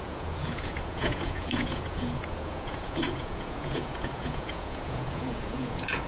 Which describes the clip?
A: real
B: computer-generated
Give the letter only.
B